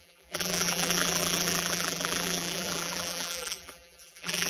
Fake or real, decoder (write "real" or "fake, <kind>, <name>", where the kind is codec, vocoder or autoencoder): fake, vocoder, BigVGAN v2